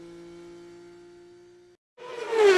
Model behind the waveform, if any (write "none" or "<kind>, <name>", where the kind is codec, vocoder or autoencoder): none